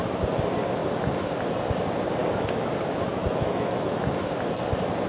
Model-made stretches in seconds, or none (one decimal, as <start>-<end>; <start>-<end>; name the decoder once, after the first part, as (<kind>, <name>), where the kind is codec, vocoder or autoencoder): 2.2-2.7 (autoencoder, DAC-VAE); 3.1-4.0